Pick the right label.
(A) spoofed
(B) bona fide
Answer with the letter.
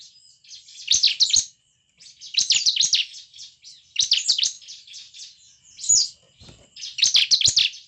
B